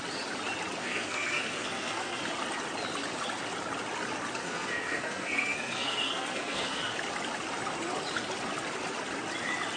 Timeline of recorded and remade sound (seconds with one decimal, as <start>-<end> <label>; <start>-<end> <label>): 0.0-0.8 recorded; 0.8-2.2 remade; 2.2-4.4 recorded; 4.4-6.8 remade; 6.8-9.8 recorded